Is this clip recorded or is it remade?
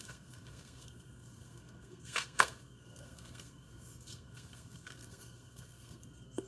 remade